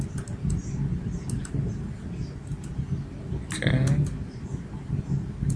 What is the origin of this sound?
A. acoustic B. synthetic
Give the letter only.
A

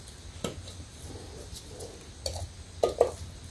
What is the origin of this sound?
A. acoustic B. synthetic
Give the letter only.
A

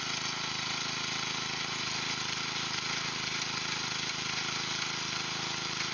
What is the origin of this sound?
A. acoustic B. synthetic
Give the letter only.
A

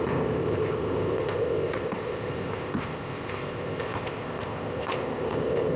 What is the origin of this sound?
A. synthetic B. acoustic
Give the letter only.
A